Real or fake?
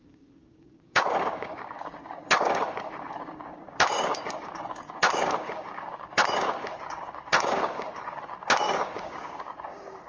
fake